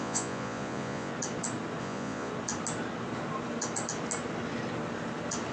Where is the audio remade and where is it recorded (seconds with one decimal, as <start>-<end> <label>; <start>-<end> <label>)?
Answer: 0.0-1.1 remade; 1.1-1.8 recorded; 1.8-2.3 remade; 2.3-5.5 recorded